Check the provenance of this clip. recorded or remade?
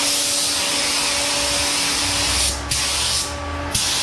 recorded